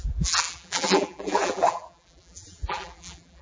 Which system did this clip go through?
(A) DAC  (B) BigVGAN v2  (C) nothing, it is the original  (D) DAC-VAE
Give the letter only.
B